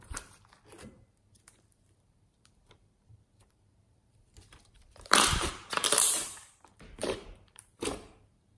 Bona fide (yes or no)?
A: no